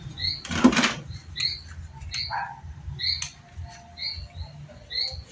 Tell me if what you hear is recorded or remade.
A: recorded